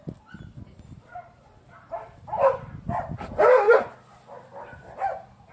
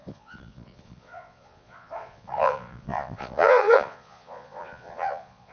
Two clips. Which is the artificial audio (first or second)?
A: second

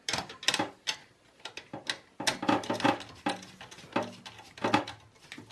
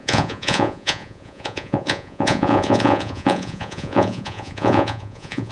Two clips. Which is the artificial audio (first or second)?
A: second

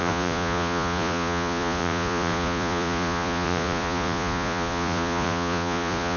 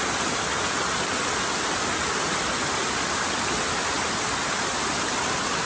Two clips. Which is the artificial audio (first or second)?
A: first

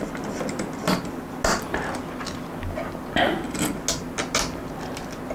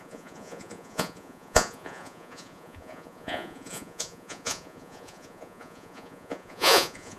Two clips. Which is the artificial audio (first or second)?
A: second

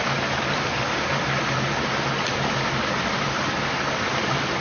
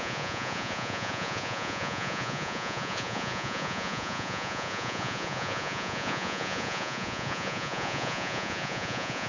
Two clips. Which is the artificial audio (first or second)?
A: second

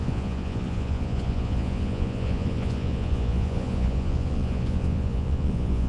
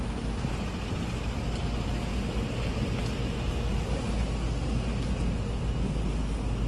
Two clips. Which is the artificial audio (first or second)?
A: first